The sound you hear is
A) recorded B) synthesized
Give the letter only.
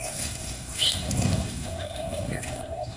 B